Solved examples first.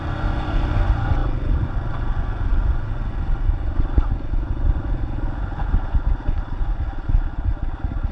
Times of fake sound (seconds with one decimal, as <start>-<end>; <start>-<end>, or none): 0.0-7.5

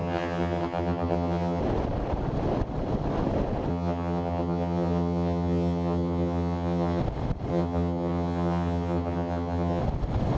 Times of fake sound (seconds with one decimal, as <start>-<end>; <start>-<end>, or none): 0.0-1.6; 3.7-7.0; 7.5-9.8

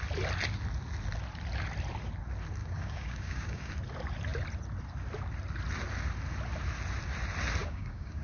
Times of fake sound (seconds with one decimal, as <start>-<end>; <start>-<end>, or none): 2.6-3.7; 7.6-8.2

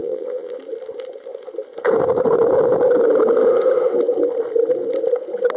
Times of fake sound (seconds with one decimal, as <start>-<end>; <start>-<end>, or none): 0.0-0.6